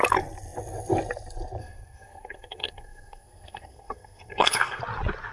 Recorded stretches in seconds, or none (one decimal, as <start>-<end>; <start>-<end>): 0.0-1.6; 4.8-5.3